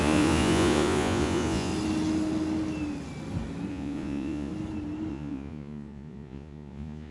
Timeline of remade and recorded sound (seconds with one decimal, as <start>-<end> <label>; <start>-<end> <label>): 0.0-1.7 remade; 1.7-3.7 recorded; 3.7-4.5 remade; 4.5-5.1 recorded; 5.1-7.1 remade